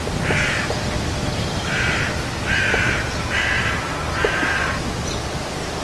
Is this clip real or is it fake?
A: real